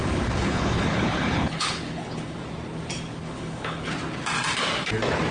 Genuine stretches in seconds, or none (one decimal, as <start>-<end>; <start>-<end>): 2.4-3.1; 3.9-5.3

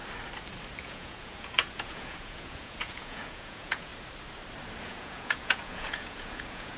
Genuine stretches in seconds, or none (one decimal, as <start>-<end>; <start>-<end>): 0.0-0.8; 3.9-4.8

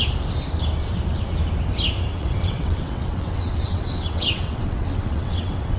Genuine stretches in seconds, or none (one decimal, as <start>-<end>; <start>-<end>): 0.0-2.1

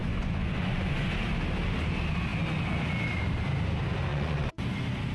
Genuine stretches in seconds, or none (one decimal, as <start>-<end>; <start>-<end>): 1.1-4.1; 4.6-5.1

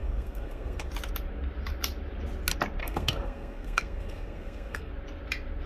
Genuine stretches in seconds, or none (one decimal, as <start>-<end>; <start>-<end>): 0.9-2.8; 4.9-5.7

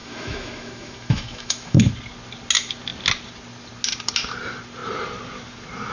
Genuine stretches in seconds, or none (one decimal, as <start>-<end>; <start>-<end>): 1.9-5.9

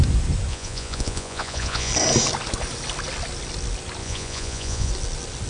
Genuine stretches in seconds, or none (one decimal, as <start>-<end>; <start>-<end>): 0.0-0.5; 1.9-4.0; 4.9-5.5